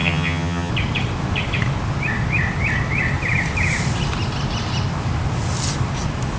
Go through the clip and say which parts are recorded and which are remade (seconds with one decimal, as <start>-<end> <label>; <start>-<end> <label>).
0.0-0.7 remade; 0.7-6.4 recorded